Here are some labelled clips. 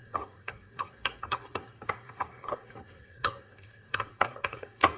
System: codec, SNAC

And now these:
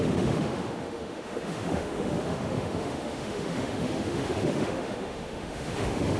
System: autoencoder, DAC-VAE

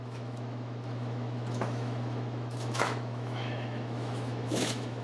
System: autoencoder, DAC-VAE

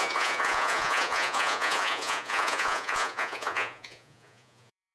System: vocoder, Vocos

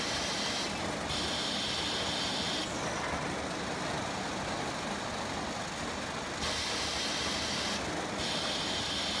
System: none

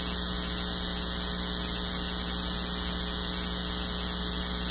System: none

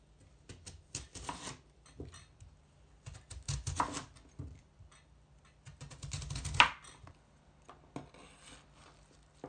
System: none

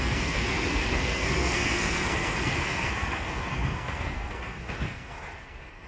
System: codec, SNAC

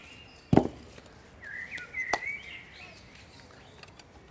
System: none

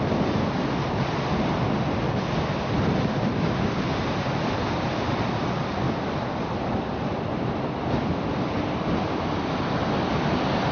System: none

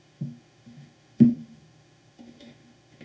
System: autoencoder, DAC-VAE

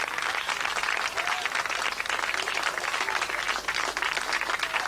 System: none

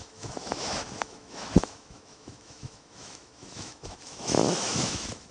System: autoencoder, DAC-VAE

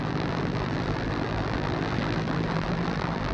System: vocoder, BigVGAN v2